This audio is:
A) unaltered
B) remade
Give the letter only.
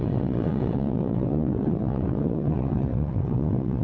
B